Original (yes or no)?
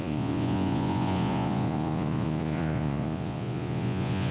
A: no